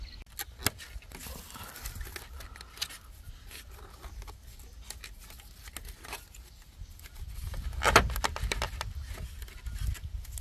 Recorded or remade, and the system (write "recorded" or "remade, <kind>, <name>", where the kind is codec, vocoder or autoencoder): recorded